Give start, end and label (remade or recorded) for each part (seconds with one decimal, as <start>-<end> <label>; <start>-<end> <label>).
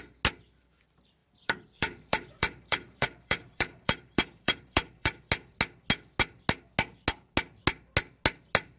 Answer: 0.0-1.2 recorded; 1.2-5.2 remade; 5.2-8.8 recorded